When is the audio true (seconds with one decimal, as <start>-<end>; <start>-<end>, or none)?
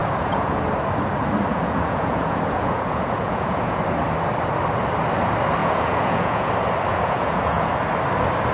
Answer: 0.6-1.5; 3.8-5.6; 6.5-6.9; 7.7-8.5